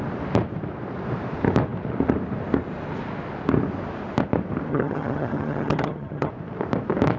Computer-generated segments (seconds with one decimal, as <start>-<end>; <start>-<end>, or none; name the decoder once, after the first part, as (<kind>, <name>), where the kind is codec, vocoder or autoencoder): 4.7-6.3 (vocoder, HiFi-GAN)